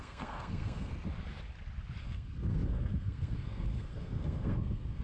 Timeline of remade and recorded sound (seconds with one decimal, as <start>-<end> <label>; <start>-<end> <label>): 0.0-0.9 remade; 0.9-2.0 recorded; 2.0-5.0 remade